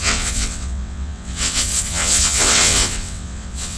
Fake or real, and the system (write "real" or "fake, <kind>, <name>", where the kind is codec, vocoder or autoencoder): fake, vocoder, WaveNeXt